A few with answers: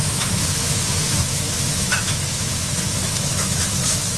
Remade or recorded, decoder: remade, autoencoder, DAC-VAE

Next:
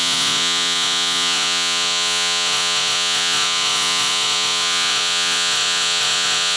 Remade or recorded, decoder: remade, vocoder, Vocos